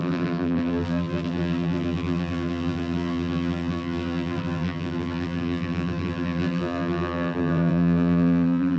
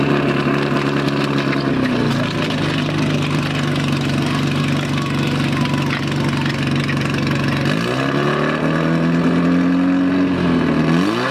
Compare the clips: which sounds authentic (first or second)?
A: second